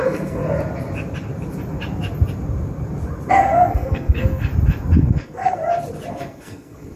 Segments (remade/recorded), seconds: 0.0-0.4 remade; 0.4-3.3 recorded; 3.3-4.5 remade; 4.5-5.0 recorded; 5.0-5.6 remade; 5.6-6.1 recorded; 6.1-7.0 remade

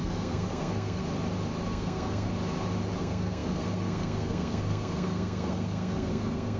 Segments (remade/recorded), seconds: 0.0-1.0 remade; 1.0-1.6 recorded; 1.6-2.3 remade; 2.3-3.0 recorded; 3.0-6.6 remade

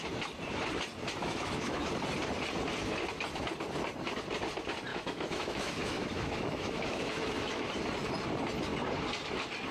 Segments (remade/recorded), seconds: 0.0-1.2 recorded; 1.2-1.9 remade; 1.9-4.9 recorded; 4.9-7.7 remade; 7.7-9.7 recorded

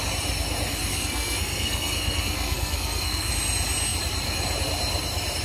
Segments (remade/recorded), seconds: 0.0-0.9 recorded; 0.9-3.3 remade; 3.3-5.4 recorded